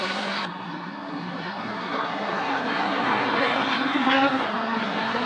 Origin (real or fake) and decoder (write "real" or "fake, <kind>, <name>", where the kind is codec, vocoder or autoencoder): fake, codec, SNAC